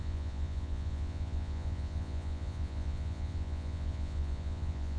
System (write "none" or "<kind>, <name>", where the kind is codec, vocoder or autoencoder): vocoder, Vocos